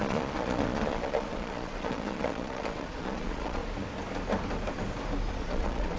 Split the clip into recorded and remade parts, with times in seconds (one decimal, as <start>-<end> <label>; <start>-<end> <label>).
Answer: 0.0-3.6 remade; 3.6-5.3 recorded; 5.3-6.0 remade